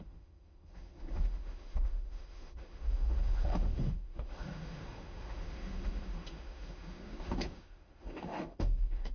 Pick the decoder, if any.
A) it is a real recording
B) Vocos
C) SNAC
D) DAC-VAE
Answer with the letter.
D